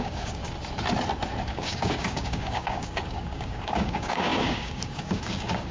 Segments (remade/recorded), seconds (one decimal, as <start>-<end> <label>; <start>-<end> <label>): 0.0-0.4 remade; 0.4-1.5 recorded; 1.5-5.7 remade